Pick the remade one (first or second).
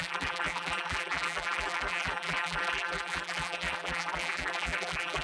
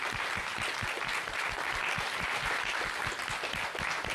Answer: first